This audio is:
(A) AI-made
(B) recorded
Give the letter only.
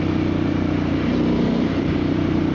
A